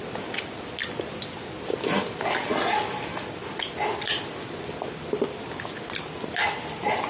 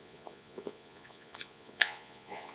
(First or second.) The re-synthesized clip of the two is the second